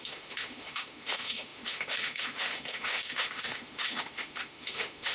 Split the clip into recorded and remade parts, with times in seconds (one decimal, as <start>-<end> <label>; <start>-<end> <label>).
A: 0.0-5.1 remade